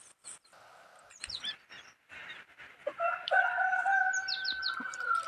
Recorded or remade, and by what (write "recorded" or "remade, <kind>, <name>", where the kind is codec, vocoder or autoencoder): recorded